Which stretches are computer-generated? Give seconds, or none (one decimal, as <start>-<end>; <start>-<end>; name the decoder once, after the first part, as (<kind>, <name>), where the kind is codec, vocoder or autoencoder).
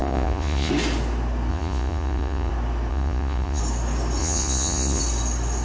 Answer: 0.0-0.7 (vocoder, Vocos); 1.5-2.5; 2.9-3.6; 4.2-5.0